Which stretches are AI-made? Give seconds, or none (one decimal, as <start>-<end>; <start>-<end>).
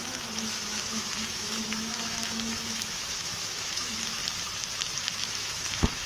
0.0-4.2; 5.2-6.1